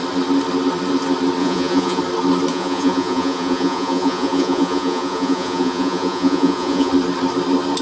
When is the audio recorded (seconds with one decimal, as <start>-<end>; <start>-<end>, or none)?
0.0-1.4; 2.0-2.5; 6.9-7.8